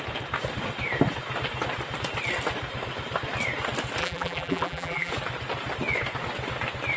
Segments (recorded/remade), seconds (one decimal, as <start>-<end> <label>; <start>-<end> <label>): 0.0-4.0 recorded; 4.0-5.1 remade; 5.1-7.0 recorded